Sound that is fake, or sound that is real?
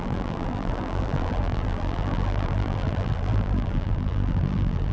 fake